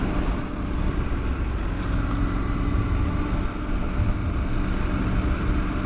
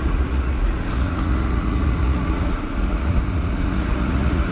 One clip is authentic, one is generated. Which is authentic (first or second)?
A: first